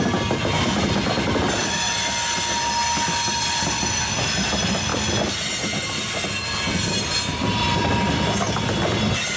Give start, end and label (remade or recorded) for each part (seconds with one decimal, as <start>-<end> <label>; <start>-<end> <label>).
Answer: 0.0-9.4 recorded